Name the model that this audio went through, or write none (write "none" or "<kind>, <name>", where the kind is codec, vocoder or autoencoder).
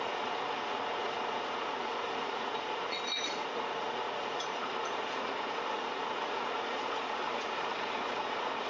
vocoder, Vocos